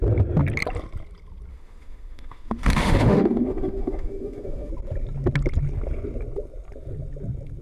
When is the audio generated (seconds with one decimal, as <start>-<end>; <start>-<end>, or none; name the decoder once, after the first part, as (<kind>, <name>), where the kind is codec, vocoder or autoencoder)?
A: 1.5-4.7 (autoencoder, DAC-VAE)